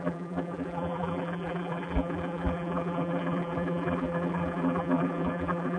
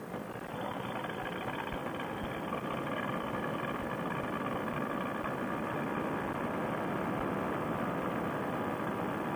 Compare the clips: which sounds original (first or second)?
second